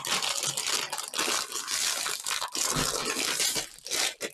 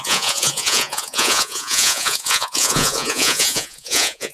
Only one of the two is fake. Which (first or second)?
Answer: second